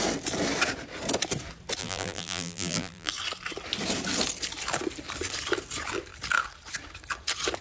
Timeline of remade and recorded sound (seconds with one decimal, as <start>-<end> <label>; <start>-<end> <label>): 0.0-1.8 recorded; 1.8-3.1 remade; 3.1-7.6 recorded